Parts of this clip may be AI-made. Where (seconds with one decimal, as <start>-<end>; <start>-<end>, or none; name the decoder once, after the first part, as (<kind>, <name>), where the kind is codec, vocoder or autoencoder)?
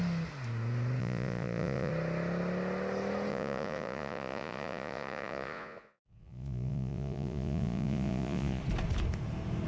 1.0-1.9 (vocoder, Vocos); 3.3-8.6